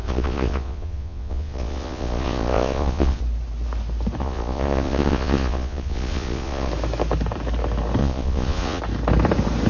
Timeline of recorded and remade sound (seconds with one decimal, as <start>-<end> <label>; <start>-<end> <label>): 0.0-3.2 remade; 3.2-4.2 recorded; 4.2-6.7 remade; 6.7-8.0 recorded; 8.0-8.8 remade; 8.8-9.7 recorded